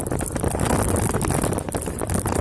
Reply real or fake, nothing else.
real